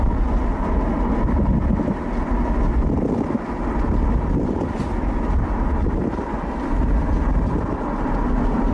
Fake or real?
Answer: real